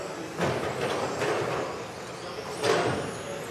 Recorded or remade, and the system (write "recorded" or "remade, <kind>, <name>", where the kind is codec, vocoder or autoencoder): recorded